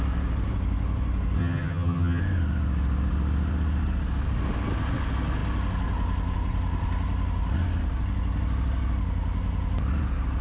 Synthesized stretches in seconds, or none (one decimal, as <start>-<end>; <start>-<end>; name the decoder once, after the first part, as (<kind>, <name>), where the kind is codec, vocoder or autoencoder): 1.4-2.2 (vocoder, HiFi-GAN)